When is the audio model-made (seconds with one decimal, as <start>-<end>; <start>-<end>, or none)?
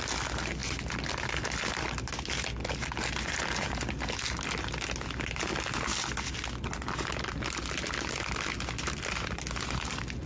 none